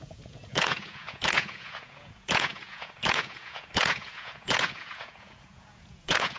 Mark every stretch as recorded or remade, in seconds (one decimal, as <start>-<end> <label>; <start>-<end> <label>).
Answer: 0.0-6.4 remade